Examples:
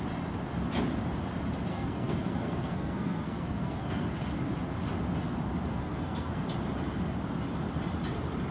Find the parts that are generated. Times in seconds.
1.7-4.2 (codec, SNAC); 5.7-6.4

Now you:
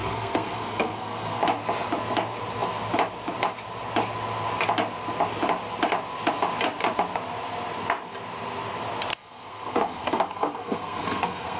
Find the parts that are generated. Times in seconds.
0.0-1.4 (codec, SNAC); 9.1-11.6

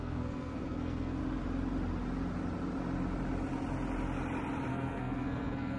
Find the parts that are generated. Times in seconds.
0.0-1.2 (codec, SNAC); 4.7-5.8

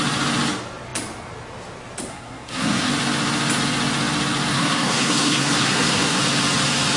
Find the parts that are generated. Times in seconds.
2.1-2.9 (codec, SNAC); 4.5-6.2